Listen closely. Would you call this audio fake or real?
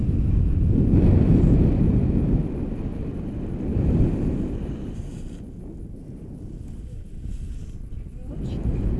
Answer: real